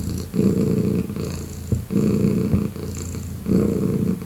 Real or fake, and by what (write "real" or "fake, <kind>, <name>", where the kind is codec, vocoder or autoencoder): real